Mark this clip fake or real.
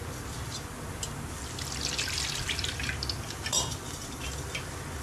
real